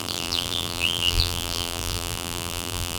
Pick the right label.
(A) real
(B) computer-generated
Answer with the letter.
B